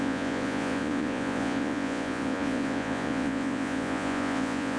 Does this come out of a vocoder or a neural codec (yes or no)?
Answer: yes